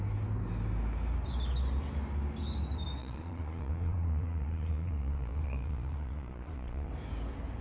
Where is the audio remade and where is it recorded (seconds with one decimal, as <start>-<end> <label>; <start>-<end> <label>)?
0.0-3.0 recorded; 3.0-6.9 remade; 6.9-7.6 recorded